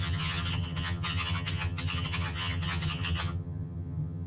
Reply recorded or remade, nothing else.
remade